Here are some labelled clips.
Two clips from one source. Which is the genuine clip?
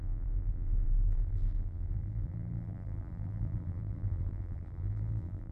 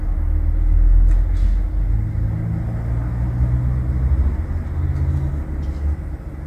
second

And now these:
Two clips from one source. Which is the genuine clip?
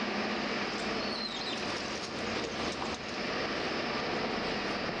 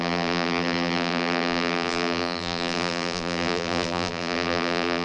first